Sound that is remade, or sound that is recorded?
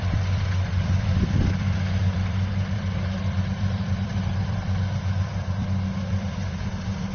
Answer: remade